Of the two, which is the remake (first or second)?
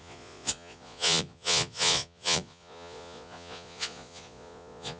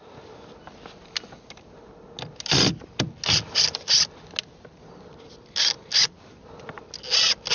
first